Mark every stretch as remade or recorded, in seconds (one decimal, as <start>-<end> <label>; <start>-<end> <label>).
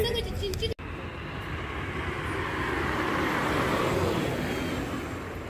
0.0-5.5 recorded